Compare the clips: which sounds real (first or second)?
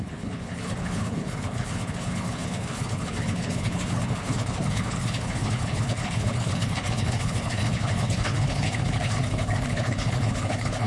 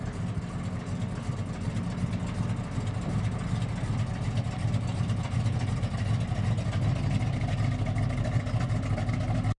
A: second